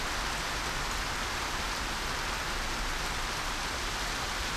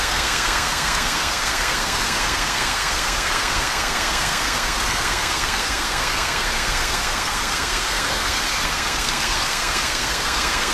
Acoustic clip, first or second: first